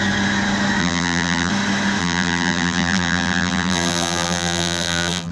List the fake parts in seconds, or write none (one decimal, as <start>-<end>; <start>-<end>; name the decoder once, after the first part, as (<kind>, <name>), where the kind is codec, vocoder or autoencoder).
0.8-1.5 (vocoder, BigVGAN v2); 2.0-5.3